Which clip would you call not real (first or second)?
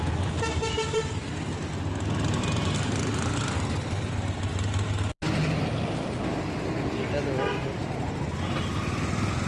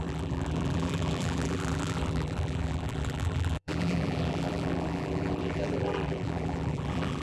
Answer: second